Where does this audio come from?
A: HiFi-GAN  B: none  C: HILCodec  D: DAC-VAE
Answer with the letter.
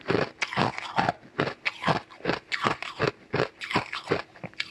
B